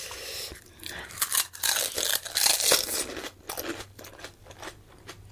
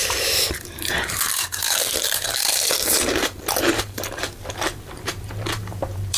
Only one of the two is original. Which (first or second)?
first